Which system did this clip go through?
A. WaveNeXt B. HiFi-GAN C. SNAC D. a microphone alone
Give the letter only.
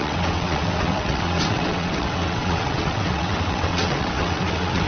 A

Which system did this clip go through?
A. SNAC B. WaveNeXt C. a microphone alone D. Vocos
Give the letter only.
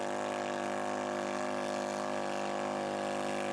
C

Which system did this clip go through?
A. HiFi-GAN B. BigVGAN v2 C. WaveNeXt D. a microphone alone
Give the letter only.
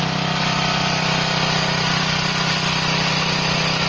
D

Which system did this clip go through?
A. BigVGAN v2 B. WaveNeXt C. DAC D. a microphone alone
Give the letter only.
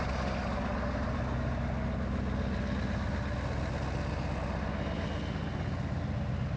D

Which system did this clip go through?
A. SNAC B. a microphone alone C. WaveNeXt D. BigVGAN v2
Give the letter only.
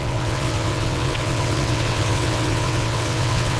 C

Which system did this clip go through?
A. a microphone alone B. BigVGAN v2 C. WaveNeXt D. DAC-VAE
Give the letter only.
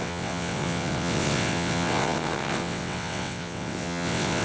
C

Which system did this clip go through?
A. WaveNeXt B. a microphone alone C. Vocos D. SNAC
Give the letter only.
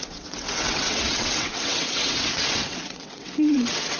A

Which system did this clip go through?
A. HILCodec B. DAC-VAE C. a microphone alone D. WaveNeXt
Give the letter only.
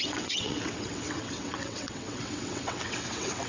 D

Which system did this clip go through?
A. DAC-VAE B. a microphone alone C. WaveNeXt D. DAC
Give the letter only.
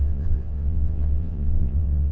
C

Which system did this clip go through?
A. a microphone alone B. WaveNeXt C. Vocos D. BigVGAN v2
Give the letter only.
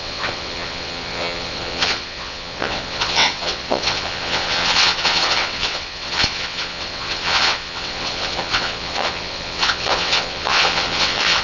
B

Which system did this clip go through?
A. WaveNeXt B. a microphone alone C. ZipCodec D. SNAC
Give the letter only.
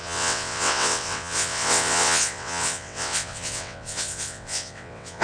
A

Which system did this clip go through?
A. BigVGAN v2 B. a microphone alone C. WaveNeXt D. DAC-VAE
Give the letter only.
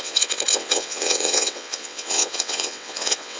C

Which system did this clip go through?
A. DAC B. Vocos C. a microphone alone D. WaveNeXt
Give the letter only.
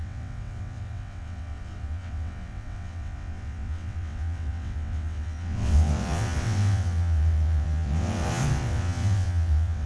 D